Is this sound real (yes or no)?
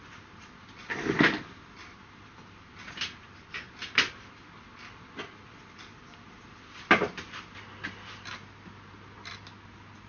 yes